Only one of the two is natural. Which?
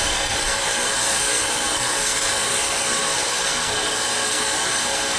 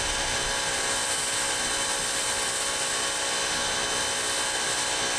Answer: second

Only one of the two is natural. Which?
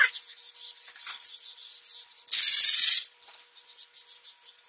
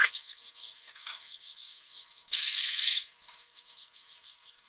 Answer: first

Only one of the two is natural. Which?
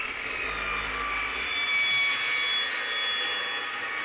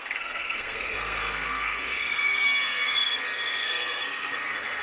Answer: first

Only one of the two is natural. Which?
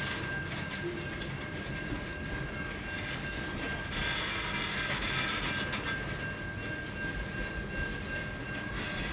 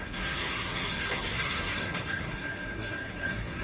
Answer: first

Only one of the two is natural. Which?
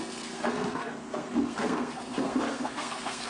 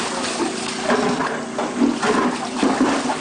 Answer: second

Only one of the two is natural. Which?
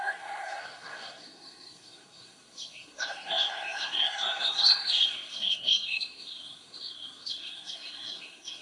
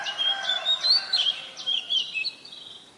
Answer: second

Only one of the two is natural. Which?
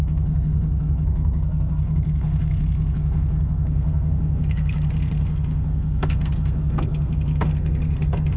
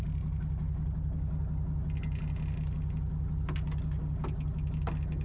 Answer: second